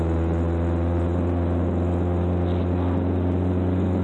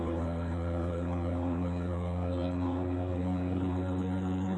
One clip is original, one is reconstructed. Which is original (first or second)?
first